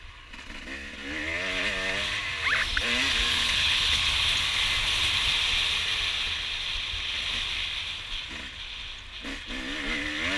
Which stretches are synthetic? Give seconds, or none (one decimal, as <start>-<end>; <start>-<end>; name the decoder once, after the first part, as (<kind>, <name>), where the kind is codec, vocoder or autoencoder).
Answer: 3.3-4.1 (codec, HILCodec)